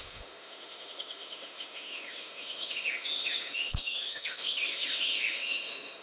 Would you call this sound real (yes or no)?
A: no